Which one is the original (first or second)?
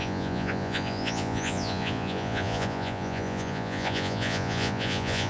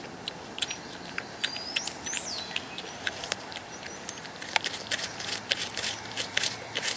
second